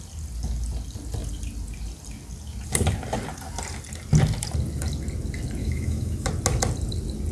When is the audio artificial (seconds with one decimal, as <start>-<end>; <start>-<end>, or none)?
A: 5.6-6.3